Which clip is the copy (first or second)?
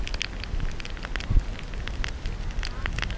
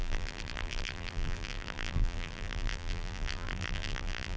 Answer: second